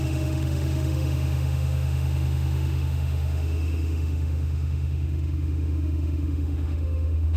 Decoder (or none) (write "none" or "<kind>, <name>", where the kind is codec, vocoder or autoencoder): autoencoder, DAC-VAE